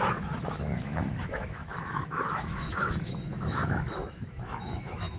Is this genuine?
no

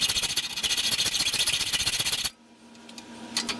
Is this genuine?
yes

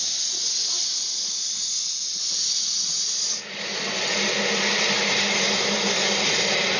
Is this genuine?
yes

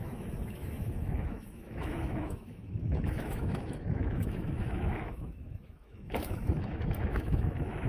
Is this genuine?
no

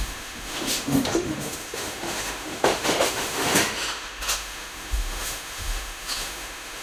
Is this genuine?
no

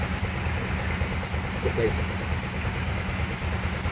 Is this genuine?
yes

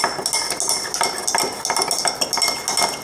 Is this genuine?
yes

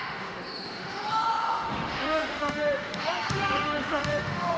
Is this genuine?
no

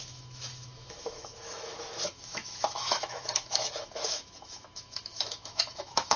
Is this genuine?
no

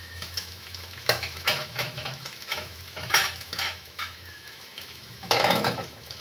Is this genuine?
no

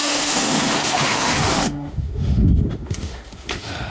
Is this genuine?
no